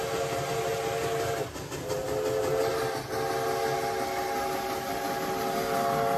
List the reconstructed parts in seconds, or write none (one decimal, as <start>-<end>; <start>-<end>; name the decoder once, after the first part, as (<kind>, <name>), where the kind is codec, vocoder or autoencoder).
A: none